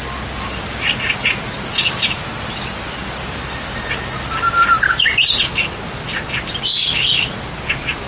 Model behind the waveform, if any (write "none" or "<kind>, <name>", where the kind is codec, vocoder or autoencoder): none